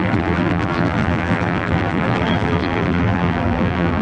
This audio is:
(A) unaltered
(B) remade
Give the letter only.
B